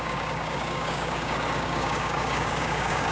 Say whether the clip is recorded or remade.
remade